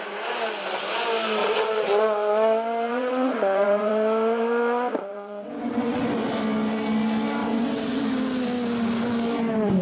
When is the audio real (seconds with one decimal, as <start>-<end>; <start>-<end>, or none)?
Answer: 0.0-1.4; 2.0-2.9; 3.9-5.1; 6.0-7.4; 8.0-9.8